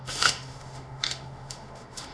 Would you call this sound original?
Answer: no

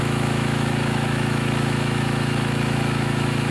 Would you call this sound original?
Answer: no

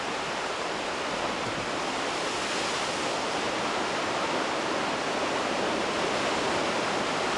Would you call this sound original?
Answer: yes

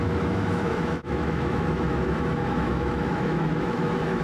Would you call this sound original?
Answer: no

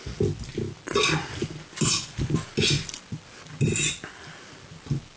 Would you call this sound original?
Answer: yes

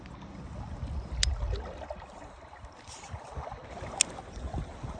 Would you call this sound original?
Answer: yes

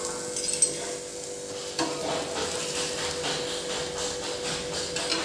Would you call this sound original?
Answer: yes